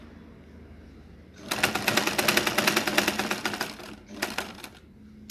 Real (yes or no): yes